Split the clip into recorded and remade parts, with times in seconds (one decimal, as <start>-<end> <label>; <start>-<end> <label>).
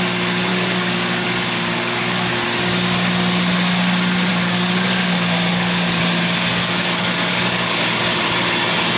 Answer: 0.0-0.5 recorded; 0.5-2.3 remade; 2.3-4.3 recorded; 4.3-6.0 remade; 6.0-6.5 recorded; 6.5-8.0 remade; 8.0-9.0 recorded